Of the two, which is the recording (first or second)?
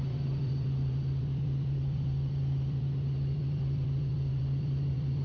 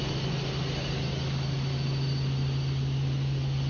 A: second